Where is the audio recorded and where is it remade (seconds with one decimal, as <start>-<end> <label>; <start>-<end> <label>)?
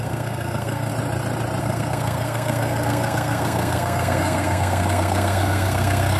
0.0-0.9 remade; 0.9-1.6 recorded; 1.6-6.2 remade